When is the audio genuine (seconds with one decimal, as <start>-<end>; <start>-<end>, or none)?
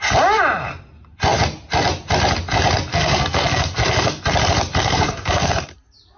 0.0-2.9; 4.2-4.8; 5.5-6.2